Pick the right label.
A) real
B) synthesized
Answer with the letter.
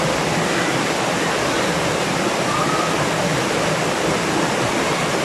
A